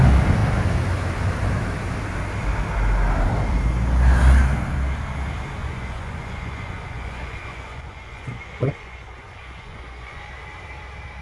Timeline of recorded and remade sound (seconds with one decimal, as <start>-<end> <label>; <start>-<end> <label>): 0.0-5.6 recorded; 5.6-10.3 remade; 10.3-11.2 recorded